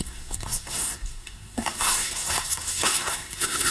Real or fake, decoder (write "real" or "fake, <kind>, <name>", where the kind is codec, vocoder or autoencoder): fake, codec, SNAC